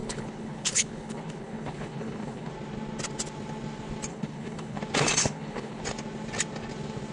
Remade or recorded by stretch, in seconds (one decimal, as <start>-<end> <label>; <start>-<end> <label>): 0.0-2.5 remade; 2.5-4.1 recorded; 4.1-4.8 remade; 4.8-5.2 recorded; 5.2-5.8 remade; 5.8-7.1 recorded

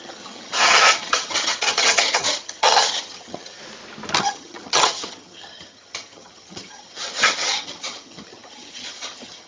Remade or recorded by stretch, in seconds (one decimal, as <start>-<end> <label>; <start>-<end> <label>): 0.0-3.6 remade; 3.6-4.2 recorded; 4.2-9.5 remade

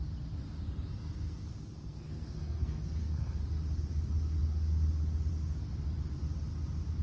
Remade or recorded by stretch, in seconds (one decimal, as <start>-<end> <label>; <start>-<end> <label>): 0.0-1.0 recorded; 1.0-3.4 remade; 3.4-7.0 recorded

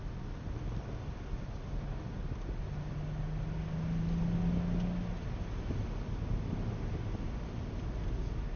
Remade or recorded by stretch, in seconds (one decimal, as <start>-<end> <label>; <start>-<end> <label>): 0.0-8.6 recorded

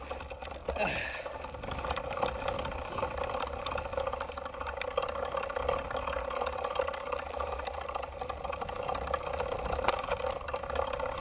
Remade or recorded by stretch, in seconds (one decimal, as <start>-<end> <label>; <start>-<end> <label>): 0.0-11.2 recorded

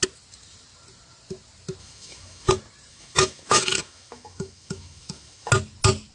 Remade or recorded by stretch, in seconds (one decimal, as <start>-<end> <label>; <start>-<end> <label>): 0.0-1.8 recorded; 1.8-2.5 remade; 2.5-2.9 recorded; 2.9-5.5 remade; 5.5-6.1 recorded

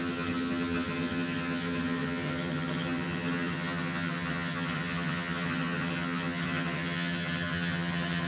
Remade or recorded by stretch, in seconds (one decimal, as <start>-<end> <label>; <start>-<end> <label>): 0.0-8.3 remade

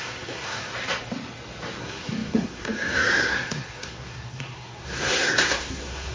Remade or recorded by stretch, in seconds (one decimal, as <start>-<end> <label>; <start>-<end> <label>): 0.0-0.7 remade; 0.7-1.8 recorded; 1.8-6.1 remade